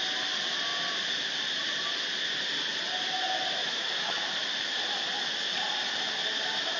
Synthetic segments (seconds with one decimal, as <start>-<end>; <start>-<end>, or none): 3.6-4.2